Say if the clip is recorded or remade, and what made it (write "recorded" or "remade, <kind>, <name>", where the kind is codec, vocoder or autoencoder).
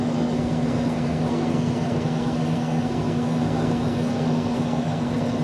remade, codec, SNAC